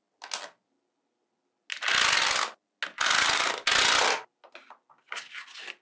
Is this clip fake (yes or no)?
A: no